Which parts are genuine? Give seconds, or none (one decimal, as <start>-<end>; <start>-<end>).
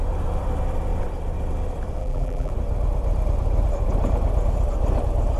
0.0-2.0; 2.5-5.4